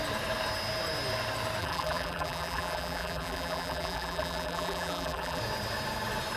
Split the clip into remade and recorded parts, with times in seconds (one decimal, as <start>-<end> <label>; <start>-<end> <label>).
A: 0.0-1.6 recorded; 1.6-5.4 remade; 5.4-6.4 recorded